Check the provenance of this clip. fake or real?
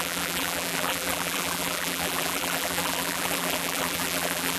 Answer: fake